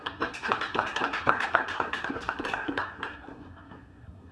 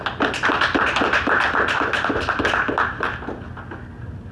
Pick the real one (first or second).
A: second